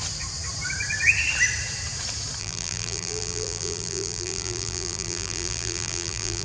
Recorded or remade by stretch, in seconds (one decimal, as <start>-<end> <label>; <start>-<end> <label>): 0.0-2.4 recorded; 2.4-6.4 remade